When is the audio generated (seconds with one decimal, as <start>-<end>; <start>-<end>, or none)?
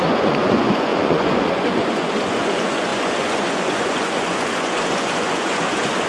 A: 0.0-6.1